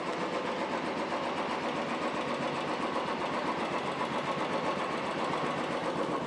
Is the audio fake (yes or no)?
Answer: no